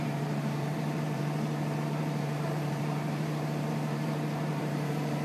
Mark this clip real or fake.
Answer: fake